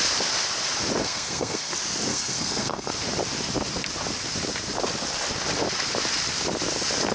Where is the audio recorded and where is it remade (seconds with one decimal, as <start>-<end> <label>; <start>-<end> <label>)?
0.0-1.0 recorded; 1.0-1.7 remade; 1.7-2.1 recorded; 2.1-2.9 remade; 2.9-7.1 recorded